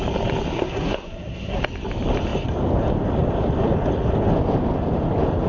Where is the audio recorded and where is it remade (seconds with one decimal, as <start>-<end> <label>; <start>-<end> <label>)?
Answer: 0.0-0.5 recorded; 0.5-1.6 remade; 1.6-5.5 recorded

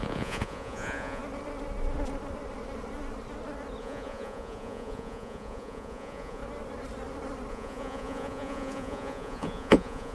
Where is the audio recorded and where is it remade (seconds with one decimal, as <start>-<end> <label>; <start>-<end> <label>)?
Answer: 0.0-1.2 remade; 1.2-3.8 recorded; 3.8-6.4 remade; 6.4-7.5 recorded; 7.5-10.1 remade

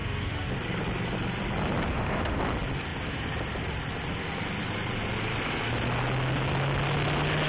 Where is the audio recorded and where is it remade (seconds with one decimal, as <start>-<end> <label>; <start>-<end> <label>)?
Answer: 0.0-0.5 remade; 0.5-1.9 recorded; 1.9-2.4 remade; 2.4-7.5 recorded

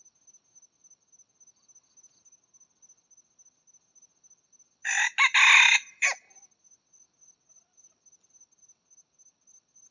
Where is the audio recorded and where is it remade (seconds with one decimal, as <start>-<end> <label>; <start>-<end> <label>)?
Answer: 0.0-9.9 recorded

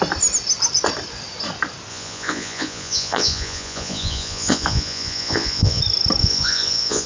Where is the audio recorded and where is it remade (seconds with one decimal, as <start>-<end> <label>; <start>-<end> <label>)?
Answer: 0.0-1.9 recorded; 1.9-5.8 remade; 5.8-6.2 recorded; 6.2-7.1 remade

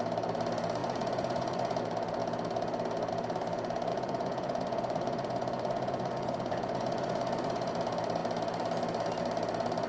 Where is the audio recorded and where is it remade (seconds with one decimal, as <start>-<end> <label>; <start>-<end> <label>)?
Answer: 0.0-0.8 recorded; 0.8-1.8 remade; 1.8-3.9 recorded; 3.9-7.7 remade; 7.7-9.9 recorded

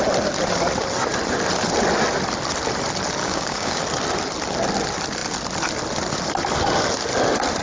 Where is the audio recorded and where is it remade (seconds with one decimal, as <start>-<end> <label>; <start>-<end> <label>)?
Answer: 0.0-3.2 recorded; 3.2-3.8 remade; 3.8-7.6 recorded